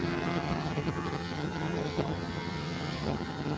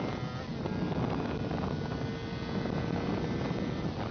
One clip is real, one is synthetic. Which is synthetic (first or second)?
first